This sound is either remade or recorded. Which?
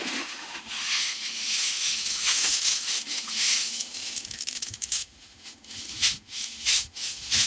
remade